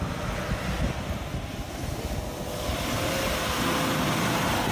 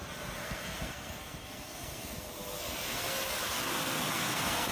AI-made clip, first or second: second